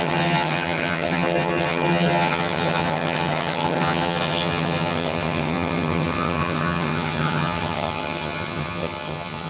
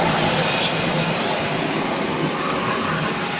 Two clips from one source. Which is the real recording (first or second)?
second